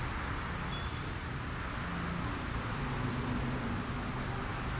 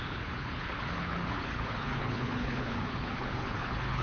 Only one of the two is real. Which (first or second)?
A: first